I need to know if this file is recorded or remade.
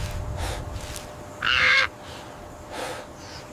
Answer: recorded